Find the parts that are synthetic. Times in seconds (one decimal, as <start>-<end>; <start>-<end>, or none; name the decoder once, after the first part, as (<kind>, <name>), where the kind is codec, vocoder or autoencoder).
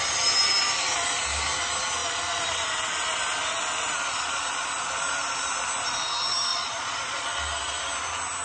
6.5-7.4 (vocoder, Vocos)